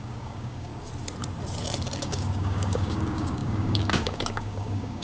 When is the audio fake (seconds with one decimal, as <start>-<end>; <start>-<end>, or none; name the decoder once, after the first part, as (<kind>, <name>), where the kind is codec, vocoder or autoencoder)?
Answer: 0.0-0.7 (codec, DAC); 2.0-5.0